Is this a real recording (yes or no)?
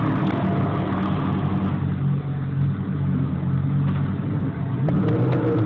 yes